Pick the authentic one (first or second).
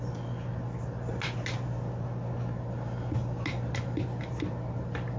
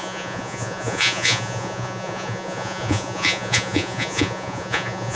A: first